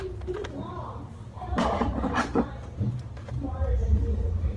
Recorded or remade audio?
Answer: remade